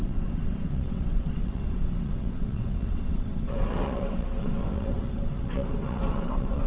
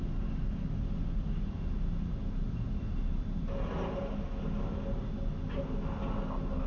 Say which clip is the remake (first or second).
first